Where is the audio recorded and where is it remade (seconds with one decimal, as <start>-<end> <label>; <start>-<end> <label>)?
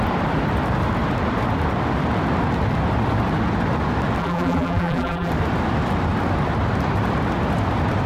0.0-4.2 recorded; 4.2-5.3 remade; 5.3-8.1 recorded